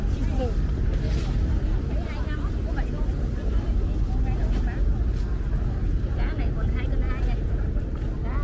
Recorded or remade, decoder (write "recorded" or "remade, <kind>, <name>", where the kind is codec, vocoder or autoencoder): recorded